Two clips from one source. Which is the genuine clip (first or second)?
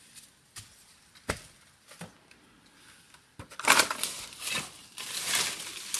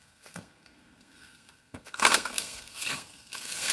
first